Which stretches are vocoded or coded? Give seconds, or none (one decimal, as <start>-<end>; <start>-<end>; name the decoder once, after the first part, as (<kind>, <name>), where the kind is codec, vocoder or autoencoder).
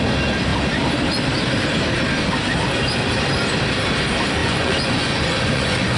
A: 4.4-6.0 (vocoder, Vocos)